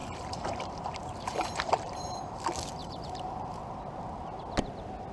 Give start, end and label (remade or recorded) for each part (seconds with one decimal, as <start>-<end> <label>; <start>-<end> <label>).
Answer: 0.0-2.4 remade; 2.4-2.8 recorded; 2.8-3.6 remade; 3.6-5.1 recorded